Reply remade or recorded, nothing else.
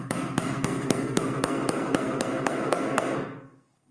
remade